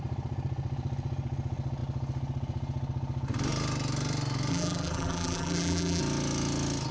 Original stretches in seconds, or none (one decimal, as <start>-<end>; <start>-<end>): 0.0-4.5; 6.0-6.9